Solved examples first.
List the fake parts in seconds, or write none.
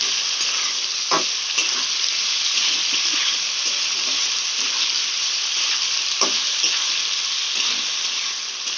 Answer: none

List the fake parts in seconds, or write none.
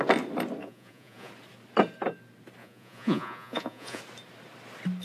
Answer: 0.6-1.3; 2.6-4.0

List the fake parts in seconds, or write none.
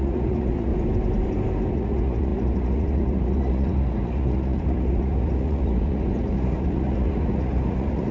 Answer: 0.0-0.7; 1.7-8.1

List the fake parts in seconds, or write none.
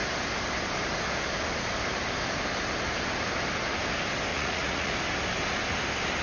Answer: 4.3-4.9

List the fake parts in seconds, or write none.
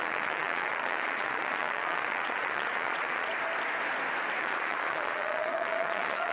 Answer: 0.0-3.3; 4.4-6.3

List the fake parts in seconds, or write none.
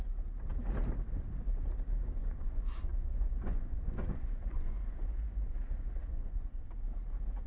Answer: 2.2-5.5; 6.0-6.7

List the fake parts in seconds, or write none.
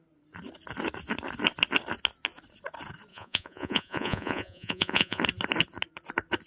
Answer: 3.1-5.2